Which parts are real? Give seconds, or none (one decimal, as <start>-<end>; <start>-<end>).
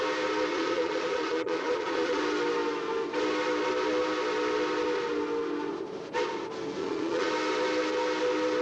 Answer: 0.0-0.5; 2.2-6.8; 7.3-8.6